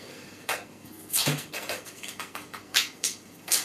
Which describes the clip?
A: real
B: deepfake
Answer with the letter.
B